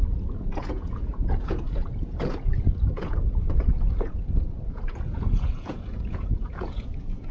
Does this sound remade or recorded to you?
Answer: remade